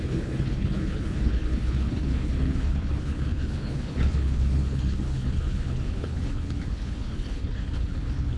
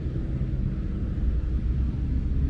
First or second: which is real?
second